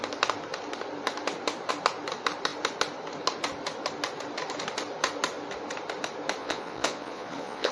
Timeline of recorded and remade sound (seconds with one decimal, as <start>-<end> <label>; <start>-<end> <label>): 0.0-6.4 recorded; 6.4-7.7 remade